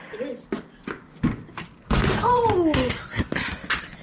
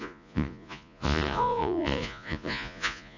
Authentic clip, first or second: first